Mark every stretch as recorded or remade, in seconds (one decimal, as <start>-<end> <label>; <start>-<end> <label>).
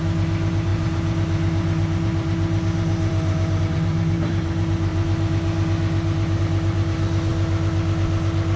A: 0.0-7.3 remade; 7.3-8.6 recorded